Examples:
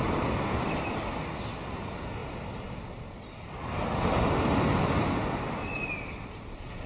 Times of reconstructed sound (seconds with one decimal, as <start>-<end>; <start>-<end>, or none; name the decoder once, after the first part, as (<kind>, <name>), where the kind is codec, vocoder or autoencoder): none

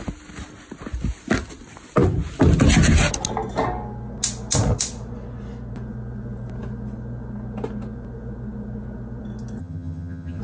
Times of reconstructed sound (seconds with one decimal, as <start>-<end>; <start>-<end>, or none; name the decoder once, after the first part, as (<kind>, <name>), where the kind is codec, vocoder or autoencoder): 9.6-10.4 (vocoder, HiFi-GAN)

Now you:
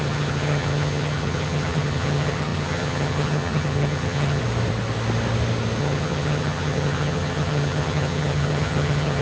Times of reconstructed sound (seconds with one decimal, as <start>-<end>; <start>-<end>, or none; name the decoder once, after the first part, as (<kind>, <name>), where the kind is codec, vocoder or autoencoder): 0.0-4.4 (vocoder, HiFi-GAN); 5.8-9.2

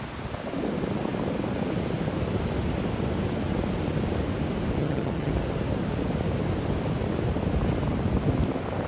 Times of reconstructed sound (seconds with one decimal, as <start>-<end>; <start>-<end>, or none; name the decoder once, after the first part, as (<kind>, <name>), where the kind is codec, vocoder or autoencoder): 4.8-5.3 (vocoder, HiFi-GAN)